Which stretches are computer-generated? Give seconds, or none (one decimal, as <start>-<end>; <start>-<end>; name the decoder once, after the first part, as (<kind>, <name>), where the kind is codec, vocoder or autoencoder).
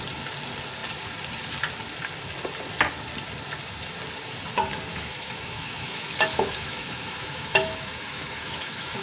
4.9-9.0 (autoencoder, DAC-VAE)